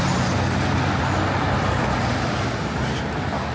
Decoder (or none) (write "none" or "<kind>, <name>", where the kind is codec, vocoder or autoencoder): none